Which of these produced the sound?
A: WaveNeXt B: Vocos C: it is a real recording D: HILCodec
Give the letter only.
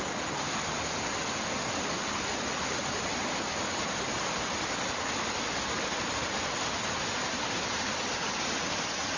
C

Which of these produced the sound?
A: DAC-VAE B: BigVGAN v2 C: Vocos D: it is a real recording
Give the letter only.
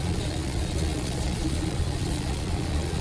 C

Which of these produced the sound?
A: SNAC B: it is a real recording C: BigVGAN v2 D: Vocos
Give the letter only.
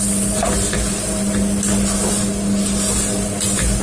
B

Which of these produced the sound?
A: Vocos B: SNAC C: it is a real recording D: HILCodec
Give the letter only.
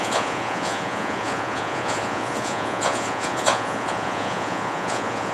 A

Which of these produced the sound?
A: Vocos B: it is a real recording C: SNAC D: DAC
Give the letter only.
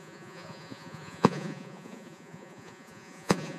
A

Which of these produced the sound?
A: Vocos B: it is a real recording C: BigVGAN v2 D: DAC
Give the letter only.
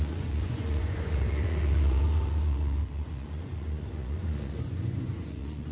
A